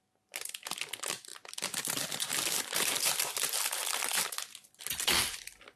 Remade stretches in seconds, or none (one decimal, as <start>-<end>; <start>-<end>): none